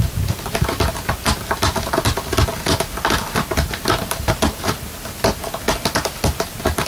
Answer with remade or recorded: recorded